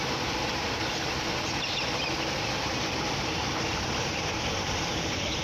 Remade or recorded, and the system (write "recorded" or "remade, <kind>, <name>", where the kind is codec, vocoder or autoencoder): remade, vocoder, BigVGAN v2